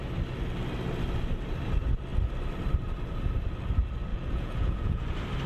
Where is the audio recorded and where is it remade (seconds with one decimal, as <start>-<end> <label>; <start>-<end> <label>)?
0.0-4.1 recorded; 4.1-5.0 remade; 5.0-5.5 recorded